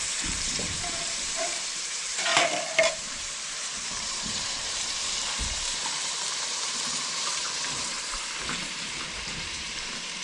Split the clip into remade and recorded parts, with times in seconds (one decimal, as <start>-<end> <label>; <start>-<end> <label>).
0.0-2.3 remade; 2.3-2.9 recorded; 2.9-10.2 remade